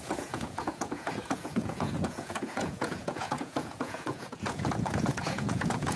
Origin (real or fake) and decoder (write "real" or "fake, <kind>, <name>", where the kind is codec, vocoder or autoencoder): fake, vocoder, Vocos